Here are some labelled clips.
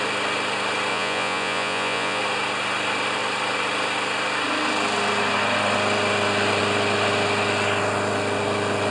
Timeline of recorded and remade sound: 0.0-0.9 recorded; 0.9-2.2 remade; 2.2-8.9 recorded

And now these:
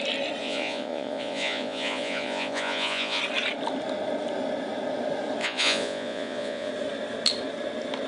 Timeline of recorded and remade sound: 0.0-0.4 recorded; 0.4-3.2 remade; 3.2-5.4 recorded; 5.4-6.7 remade; 6.7-8.1 recorded